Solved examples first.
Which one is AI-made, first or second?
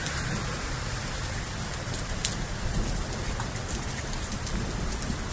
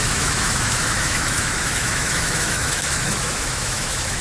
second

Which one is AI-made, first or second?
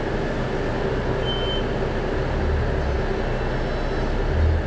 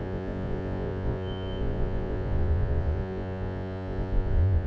second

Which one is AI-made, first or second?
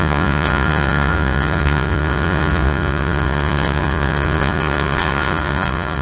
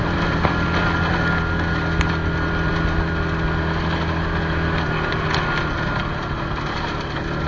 first